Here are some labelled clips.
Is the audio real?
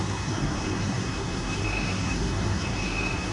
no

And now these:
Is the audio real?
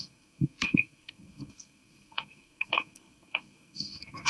no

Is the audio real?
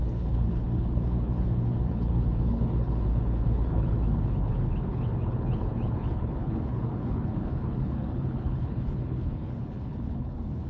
no